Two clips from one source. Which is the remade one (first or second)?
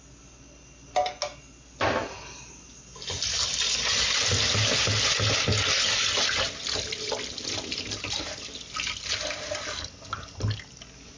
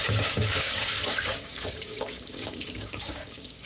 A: second